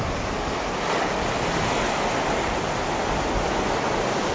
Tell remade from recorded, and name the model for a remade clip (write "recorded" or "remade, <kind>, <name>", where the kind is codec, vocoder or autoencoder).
recorded